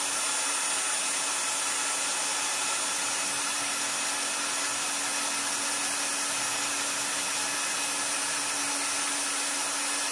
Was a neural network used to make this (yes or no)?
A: no